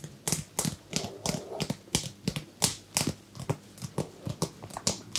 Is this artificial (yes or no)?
no